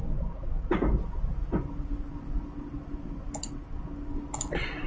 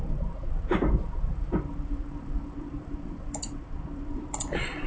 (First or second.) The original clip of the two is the first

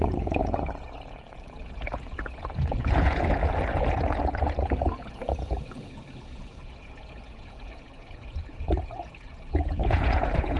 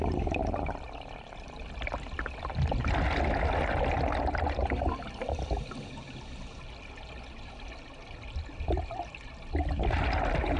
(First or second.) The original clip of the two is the second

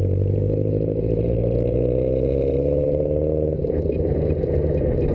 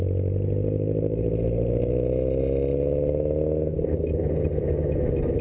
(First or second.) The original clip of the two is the second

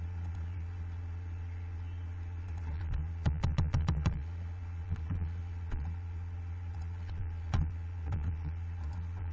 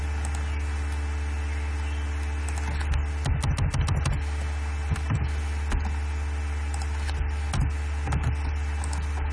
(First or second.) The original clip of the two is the second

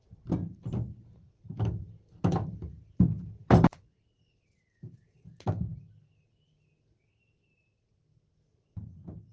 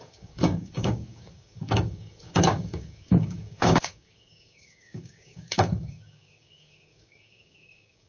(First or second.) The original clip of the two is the first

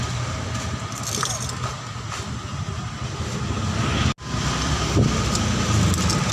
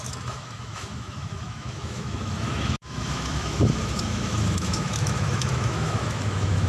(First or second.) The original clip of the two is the first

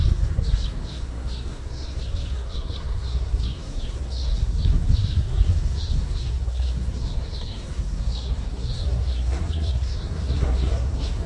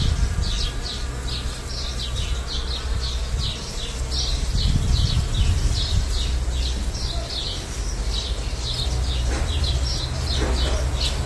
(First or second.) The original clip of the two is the second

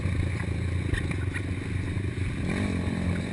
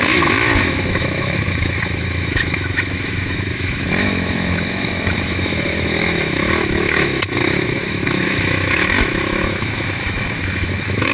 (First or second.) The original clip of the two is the first